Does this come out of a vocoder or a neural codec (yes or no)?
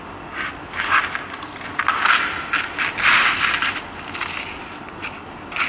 no